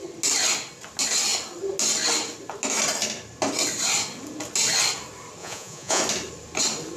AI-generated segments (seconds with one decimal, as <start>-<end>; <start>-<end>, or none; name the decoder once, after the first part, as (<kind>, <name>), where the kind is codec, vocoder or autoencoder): 5.4-6.0 (vocoder, Vocos)